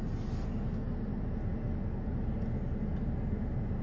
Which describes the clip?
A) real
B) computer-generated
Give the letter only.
A